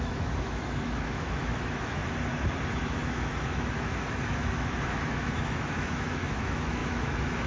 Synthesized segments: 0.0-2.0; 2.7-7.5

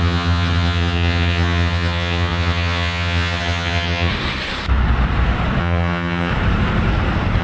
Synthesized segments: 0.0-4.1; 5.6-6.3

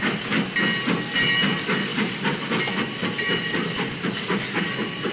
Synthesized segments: none

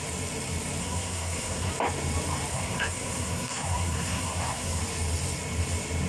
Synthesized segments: 0.8-1.7; 2.5-4.8

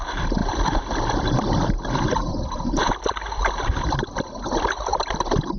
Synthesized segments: none

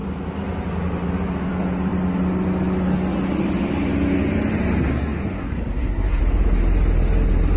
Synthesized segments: 4.8-6.2

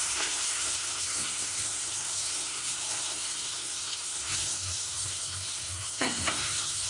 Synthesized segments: 0.0-6.9